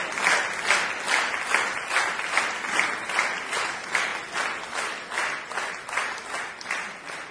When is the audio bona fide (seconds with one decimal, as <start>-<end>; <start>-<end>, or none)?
0.0-7.3